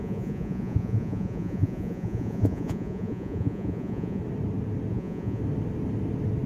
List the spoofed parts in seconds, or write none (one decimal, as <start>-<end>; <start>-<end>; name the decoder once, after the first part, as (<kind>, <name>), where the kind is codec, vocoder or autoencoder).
0.0-4.2 (vocoder, Vocos); 4.9-5.4